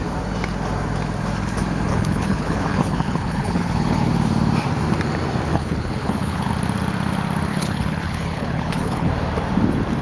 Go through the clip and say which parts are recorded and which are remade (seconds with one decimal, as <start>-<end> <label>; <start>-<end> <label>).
0.0-1.9 recorded; 1.9-4.1 remade; 4.1-5.5 recorded; 5.5-6.5 remade; 6.5-7.5 recorded; 7.5-9.1 remade; 9.1-10.0 recorded